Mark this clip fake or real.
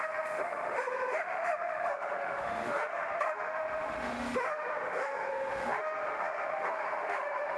fake